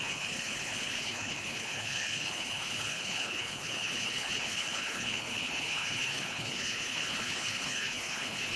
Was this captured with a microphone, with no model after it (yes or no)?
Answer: no